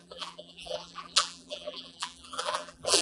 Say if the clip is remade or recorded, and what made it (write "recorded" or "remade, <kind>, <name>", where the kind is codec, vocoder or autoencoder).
remade, vocoder, BigVGAN v2